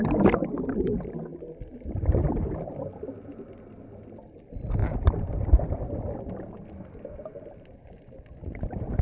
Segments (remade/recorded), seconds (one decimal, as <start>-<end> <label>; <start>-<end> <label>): 0.0-9.0 recorded

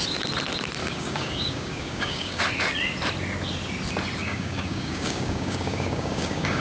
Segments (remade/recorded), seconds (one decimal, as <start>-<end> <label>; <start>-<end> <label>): 0.0-0.8 recorded; 0.8-2.4 remade; 2.4-4.2 recorded; 4.2-6.6 remade

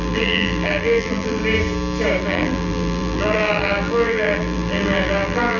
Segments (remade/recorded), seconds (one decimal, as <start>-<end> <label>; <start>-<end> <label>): 0.0-1.4 remade; 1.4-2.2 recorded; 2.2-5.6 remade